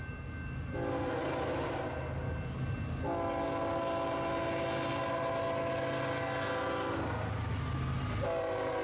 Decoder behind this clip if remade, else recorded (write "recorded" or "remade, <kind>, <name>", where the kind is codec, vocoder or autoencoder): recorded